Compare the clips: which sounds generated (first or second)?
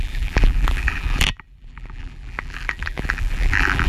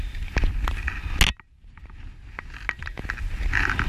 first